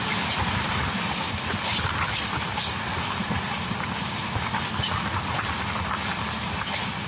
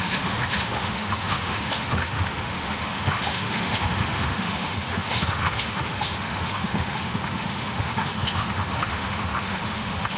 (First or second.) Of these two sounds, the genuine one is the first